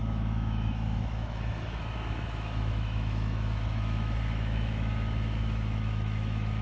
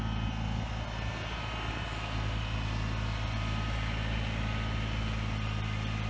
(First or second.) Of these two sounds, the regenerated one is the first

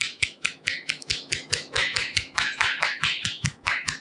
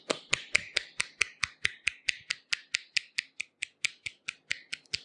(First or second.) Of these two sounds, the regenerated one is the first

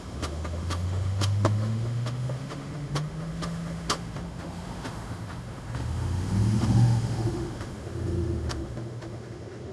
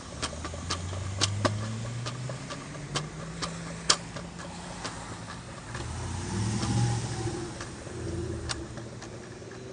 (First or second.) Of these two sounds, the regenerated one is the first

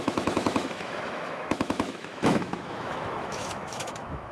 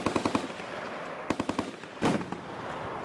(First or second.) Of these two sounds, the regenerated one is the first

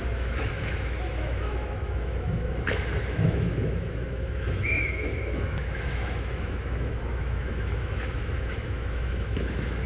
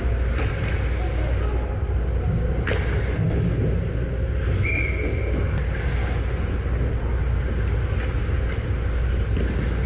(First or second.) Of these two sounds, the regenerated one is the first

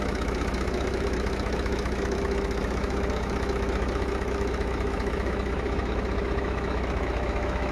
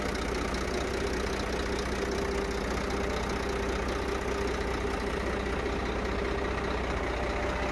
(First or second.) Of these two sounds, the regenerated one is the first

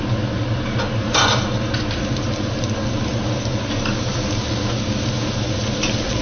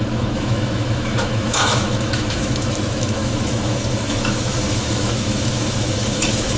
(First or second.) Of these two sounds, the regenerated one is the second